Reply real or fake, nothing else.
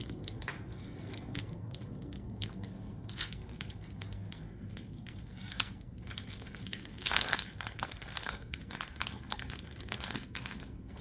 fake